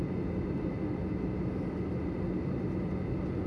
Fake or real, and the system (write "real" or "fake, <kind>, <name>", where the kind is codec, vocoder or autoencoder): real